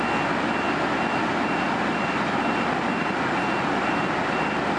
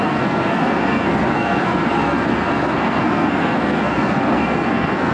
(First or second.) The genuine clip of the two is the first